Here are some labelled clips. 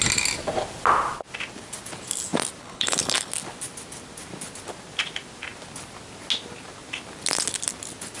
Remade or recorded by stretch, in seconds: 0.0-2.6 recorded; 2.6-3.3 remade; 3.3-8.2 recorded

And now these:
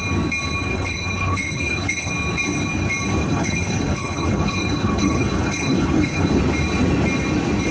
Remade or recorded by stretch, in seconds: 0.0-0.7 recorded; 0.7-2.1 remade; 2.1-3.2 recorded; 3.2-6.4 remade; 6.4-7.7 recorded

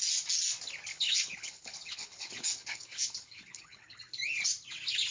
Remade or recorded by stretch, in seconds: 0.0-0.9 recorded; 0.9-4.0 remade; 4.0-5.1 recorded

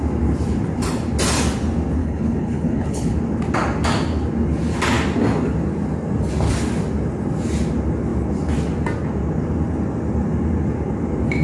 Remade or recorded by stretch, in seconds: 0.0-2.0 recorded; 2.0-3.2 remade; 3.2-11.4 recorded

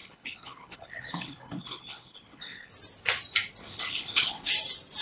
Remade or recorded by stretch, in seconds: 0.0-2.7 remade; 2.7-3.6 recorded; 3.6-4.5 remade; 4.5-5.0 recorded

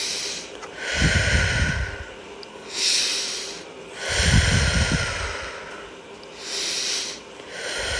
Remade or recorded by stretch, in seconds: 0.0-2.5 recorded; 2.5-3.0 remade; 3.0-8.0 recorded